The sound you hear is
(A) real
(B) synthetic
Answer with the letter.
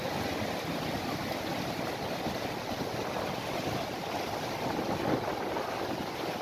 A